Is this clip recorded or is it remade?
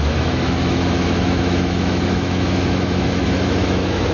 remade